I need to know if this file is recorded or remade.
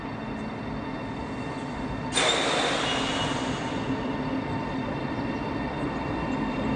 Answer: recorded